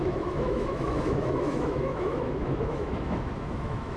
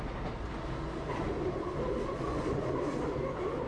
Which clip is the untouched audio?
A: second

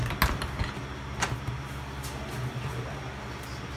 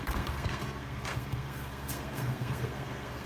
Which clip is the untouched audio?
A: first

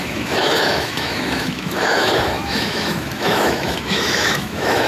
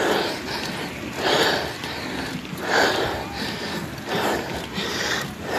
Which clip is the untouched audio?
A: second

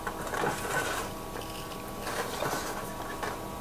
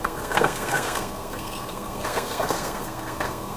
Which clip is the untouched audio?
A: first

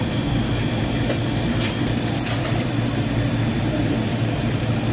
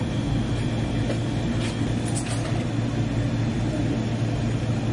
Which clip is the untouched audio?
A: second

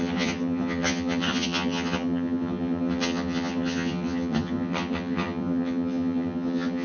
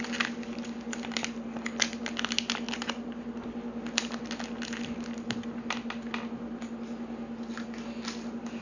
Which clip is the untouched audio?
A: second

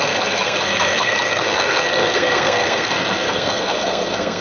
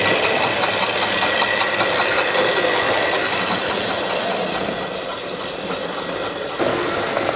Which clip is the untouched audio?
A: second